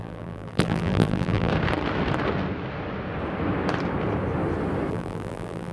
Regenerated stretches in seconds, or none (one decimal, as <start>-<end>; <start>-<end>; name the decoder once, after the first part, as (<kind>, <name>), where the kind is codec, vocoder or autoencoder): 0.0-1.5 (vocoder, BigVGAN v2); 4.9-5.7